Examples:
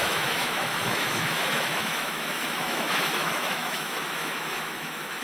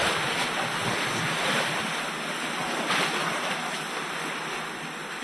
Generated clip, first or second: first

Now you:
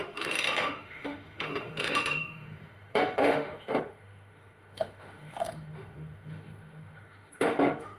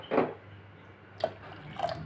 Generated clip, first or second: first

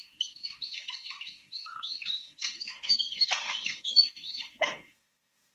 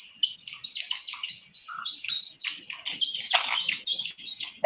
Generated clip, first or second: first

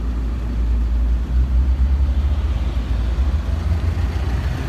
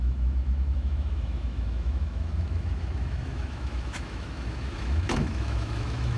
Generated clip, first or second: second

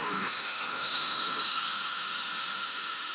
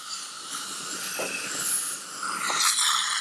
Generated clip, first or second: first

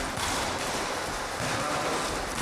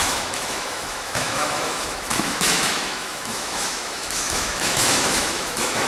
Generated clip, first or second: second